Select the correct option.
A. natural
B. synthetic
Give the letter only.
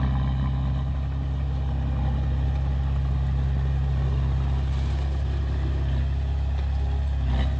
A